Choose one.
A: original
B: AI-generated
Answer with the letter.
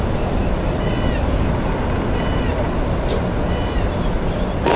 A